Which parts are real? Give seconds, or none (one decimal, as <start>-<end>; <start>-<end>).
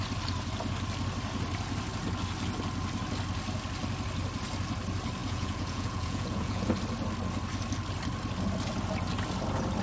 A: 0.0-5.2; 6.7-9.8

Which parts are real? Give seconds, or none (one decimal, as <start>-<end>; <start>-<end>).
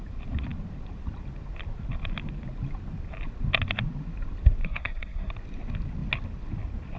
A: 0.0-4.6; 5.3-7.0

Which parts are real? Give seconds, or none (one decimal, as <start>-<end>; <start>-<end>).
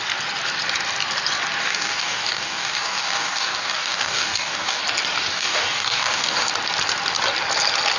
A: 0.0-1.6; 4.8-5.3; 6.5-8.0